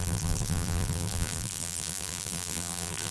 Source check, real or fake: fake